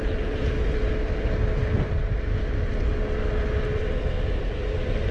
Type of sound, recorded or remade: recorded